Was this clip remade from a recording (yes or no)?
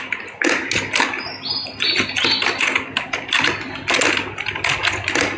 no